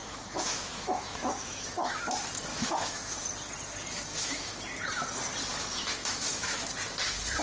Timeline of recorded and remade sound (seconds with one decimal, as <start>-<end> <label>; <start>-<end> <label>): 0.0-2.0 remade; 2.0-2.5 recorded; 2.5-3.2 remade; 3.2-4.1 recorded; 4.1-4.6 remade; 4.6-5.5 recorded; 5.5-6.7 remade; 6.7-7.4 recorded